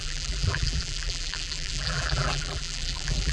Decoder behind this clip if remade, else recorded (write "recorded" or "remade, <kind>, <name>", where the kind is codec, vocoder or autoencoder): remade, vocoder, BigVGAN v2